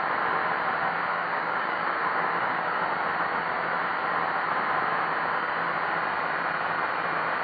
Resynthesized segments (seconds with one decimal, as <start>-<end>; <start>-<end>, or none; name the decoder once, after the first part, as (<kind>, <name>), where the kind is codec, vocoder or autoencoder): 1.1-2.8 (codec, DAC)